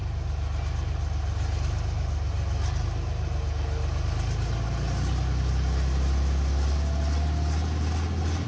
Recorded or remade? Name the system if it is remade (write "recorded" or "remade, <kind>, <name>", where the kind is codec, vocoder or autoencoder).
recorded